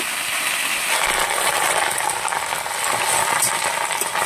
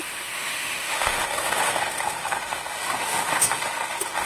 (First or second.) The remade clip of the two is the second